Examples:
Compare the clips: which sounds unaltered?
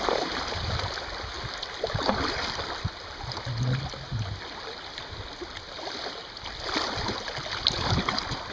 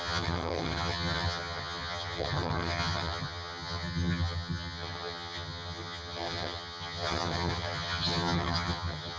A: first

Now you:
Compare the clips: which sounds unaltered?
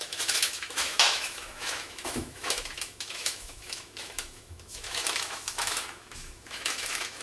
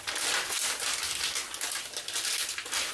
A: second